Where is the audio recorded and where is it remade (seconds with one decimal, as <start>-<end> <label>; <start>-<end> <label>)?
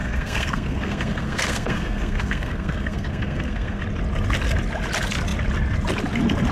0.0-3.8 remade; 3.8-6.5 recorded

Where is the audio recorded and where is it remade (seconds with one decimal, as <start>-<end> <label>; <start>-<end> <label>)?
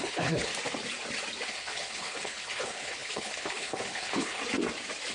0.0-0.5 remade; 0.5-1.5 recorded; 1.5-4.4 remade; 4.4-5.1 recorded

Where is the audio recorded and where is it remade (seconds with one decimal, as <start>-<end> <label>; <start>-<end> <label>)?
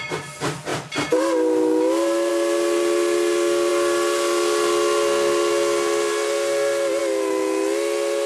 0.0-8.3 recorded